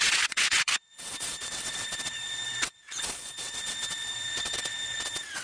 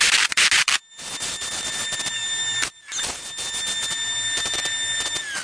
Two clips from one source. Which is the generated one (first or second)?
first